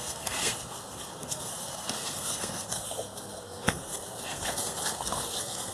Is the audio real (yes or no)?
no